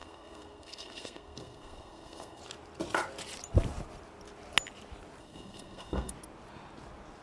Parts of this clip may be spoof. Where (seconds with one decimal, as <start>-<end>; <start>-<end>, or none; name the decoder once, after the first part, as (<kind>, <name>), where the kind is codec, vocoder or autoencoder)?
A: 0.0-2.4 (codec, SNAC); 5.2-6.1